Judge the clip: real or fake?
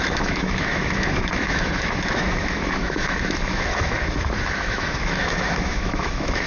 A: fake